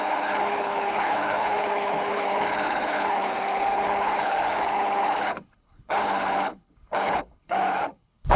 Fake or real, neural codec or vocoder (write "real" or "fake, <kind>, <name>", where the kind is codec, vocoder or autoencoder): fake, codec, HILCodec